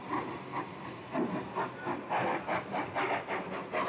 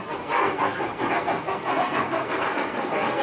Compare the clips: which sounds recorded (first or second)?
first